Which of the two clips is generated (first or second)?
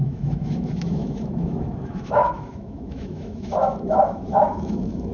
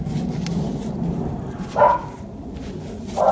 first